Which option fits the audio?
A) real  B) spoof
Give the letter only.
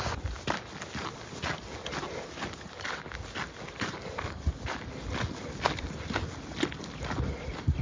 A